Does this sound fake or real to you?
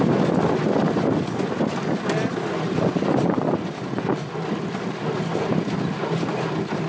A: real